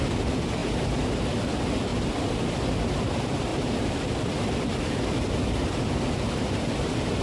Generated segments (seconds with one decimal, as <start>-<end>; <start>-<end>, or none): 0.6-1.4; 3.5-4.9; 5.6-6.8